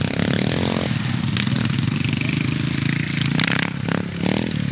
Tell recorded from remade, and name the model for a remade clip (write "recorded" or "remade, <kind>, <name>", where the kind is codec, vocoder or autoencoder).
recorded